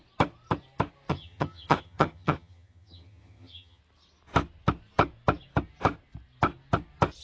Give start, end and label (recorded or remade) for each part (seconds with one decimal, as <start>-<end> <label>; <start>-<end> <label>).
0.0-1.1 recorded; 1.1-3.8 remade; 3.8-7.2 recorded